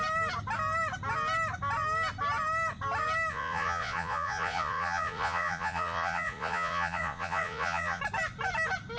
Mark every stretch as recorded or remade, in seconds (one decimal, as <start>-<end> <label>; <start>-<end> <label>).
0.0-3.3 recorded; 3.3-8.0 remade; 8.0-9.0 recorded